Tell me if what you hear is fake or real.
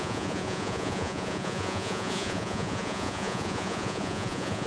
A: fake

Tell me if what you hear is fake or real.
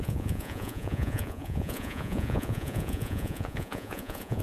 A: fake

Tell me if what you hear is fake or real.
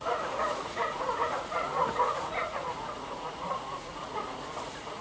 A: fake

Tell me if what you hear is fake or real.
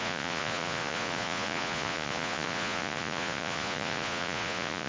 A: fake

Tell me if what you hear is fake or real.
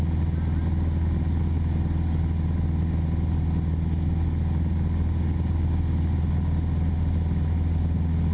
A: real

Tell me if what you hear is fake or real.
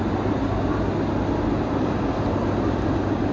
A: real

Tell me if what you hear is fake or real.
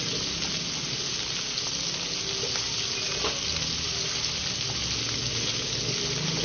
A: real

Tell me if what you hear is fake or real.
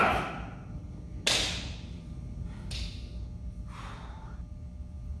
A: real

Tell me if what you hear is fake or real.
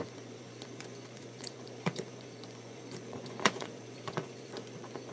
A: fake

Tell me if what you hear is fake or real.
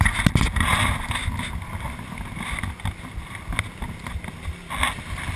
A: real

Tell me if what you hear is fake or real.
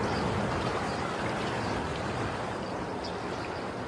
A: real